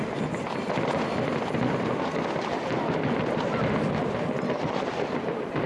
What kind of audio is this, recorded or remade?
recorded